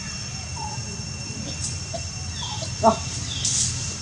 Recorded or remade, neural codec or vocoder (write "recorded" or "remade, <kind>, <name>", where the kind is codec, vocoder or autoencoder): recorded